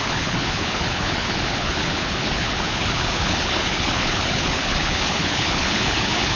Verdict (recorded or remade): remade